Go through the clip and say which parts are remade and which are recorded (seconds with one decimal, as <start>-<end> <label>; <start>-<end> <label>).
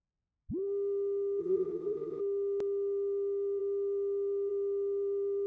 0.0-1.4 recorded; 1.4-2.2 remade; 2.2-5.5 recorded